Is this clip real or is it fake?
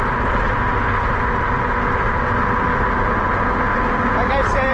real